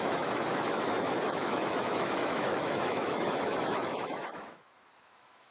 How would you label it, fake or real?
fake